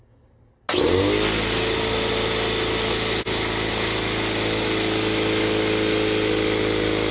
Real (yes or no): yes